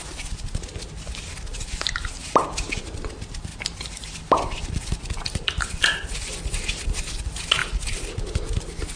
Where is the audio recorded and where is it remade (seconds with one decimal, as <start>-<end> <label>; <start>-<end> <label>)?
0.0-2.2 recorded; 2.2-2.8 remade; 2.8-3.5 recorded; 3.5-7.0 remade; 7.0-7.6 recorded; 7.6-8.2 remade; 8.2-9.0 recorded